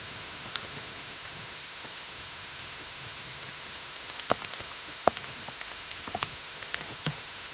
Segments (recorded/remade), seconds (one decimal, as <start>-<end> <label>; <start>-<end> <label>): 0.0-7.5 remade